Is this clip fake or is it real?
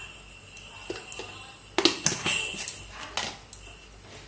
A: real